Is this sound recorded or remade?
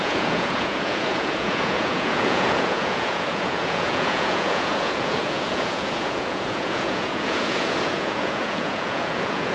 remade